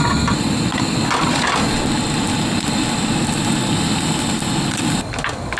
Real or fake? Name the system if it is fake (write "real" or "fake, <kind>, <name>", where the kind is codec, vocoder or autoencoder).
real